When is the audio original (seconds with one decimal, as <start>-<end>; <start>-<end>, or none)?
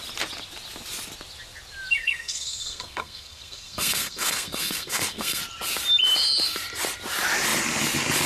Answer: 0.0-2.0; 5.4-8.3